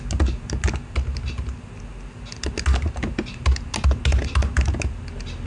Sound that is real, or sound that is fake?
real